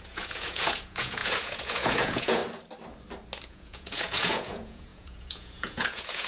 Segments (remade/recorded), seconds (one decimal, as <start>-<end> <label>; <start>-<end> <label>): 0.0-2.4 remade; 2.4-3.5 recorded; 3.5-6.3 remade